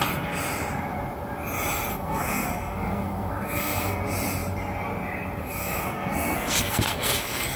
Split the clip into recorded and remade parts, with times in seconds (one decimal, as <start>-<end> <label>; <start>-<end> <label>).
0.0-1.9 recorded; 1.9-4.0 remade; 4.0-5.4 recorded; 5.4-7.6 remade